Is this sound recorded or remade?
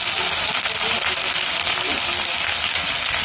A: recorded